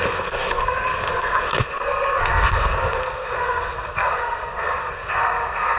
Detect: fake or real fake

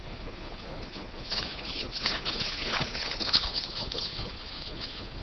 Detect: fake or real fake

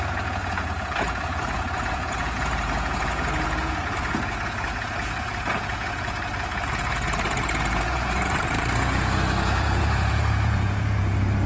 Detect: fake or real fake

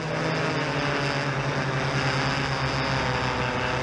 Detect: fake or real real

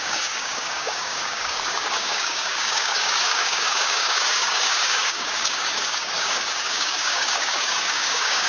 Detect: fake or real fake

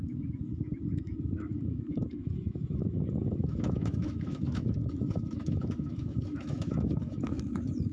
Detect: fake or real fake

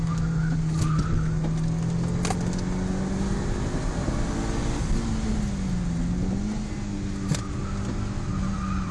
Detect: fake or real real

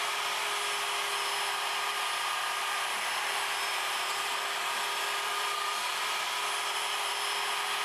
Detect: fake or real fake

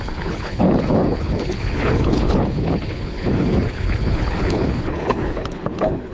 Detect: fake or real fake